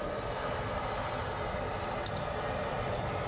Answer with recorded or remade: recorded